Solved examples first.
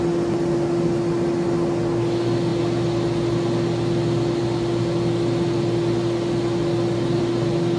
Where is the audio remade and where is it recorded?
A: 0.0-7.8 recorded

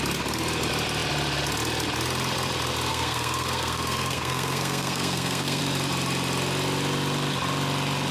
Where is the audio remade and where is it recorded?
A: 0.0-2.9 recorded; 2.9-5.6 remade; 5.6-8.1 recorded

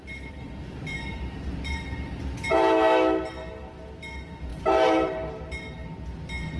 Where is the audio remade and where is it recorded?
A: 0.0-0.9 recorded; 0.9-1.5 remade; 1.5-4.5 recorded; 4.5-5.3 remade; 5.3-6.6 recorded